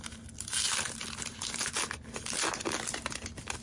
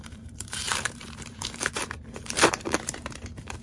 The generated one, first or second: second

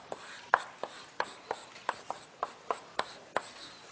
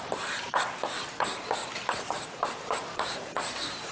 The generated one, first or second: second